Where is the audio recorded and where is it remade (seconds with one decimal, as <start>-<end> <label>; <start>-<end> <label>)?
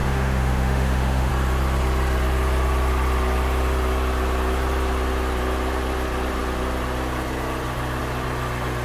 0.0-1.3 remade; 1.3-8.8 recorded